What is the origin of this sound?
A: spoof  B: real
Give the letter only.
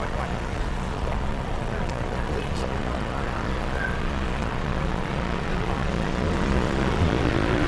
A